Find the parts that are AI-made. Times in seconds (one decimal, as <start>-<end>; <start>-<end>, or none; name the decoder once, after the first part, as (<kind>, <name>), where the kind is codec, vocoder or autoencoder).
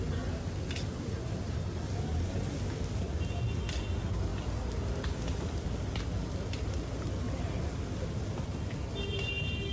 none